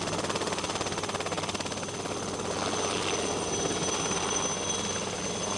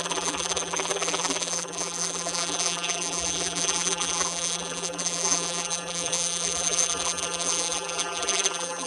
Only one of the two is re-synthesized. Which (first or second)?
second